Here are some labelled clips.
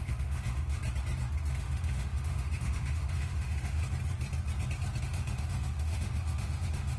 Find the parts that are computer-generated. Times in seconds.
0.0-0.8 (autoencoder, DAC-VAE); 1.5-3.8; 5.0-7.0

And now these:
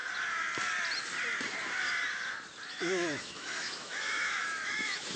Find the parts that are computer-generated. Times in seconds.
2.7-5.2 (autoencoder, DAC-VAE)

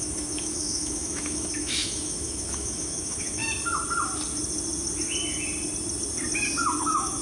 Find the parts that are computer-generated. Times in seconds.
0.0-3.4 (autoencoder, DAC-VAE); 6.8-7.2

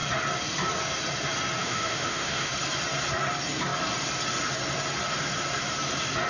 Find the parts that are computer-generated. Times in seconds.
1.6-2.5 (autoencoder, DAC-VAE)

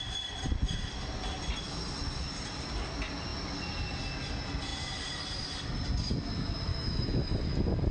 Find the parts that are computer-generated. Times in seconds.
6.7-7.4 (autoencoder, DAC-VAE)

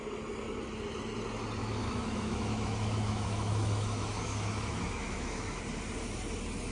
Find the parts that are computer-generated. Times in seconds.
1.6-5.6 (autoencoder, DAC-VAE)